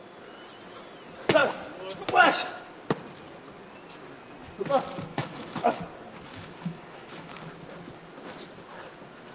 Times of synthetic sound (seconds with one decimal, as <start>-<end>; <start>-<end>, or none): 5.1-5.8; 6.3-7.3